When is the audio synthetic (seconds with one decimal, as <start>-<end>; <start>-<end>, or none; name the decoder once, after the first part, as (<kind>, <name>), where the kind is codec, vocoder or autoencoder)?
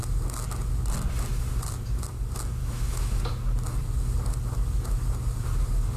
2.6-3.2 (autoencoder, DAC-VAE)